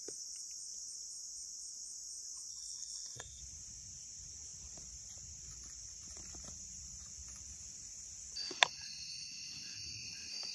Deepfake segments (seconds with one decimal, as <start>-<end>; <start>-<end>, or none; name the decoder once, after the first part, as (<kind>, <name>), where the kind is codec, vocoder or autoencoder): 2.5-3.4 (codec, SNAC)